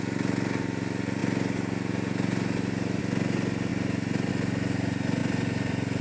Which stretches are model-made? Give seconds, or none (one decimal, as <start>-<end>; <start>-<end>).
5.2-6.0